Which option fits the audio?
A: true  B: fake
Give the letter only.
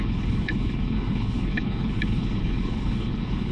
B